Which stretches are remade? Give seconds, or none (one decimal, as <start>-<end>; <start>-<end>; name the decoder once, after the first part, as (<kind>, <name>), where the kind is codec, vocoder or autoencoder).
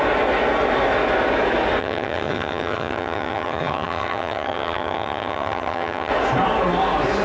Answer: 1.8-6.1 (vocoder, HiFi-GAN)